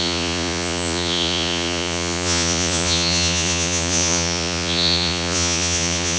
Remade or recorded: remade